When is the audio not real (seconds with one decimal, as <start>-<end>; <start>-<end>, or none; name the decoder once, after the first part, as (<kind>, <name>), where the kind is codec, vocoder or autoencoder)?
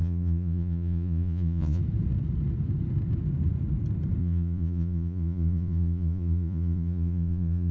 0.0-1.8 (vocoder, Vocos); 4.2-7.7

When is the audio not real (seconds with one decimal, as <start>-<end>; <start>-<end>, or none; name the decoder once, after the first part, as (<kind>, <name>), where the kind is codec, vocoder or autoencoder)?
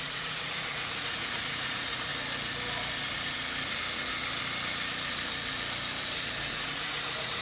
0.0-2.1 (vocoder, Vocos); 6.5-7.4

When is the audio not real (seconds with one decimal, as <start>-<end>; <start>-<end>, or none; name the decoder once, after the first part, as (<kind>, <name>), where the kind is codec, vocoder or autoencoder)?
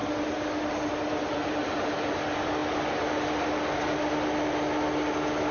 none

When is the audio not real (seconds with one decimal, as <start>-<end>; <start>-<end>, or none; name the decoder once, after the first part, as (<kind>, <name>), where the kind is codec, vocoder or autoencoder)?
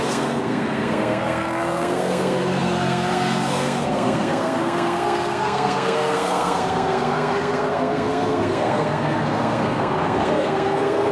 0.0-11.1 (codec, SNAC)